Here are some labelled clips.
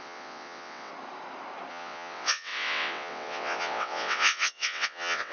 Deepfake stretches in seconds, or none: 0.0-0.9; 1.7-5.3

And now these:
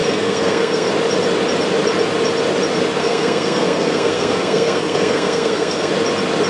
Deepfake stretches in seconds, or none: 0.0-0.9; 3.0-5.9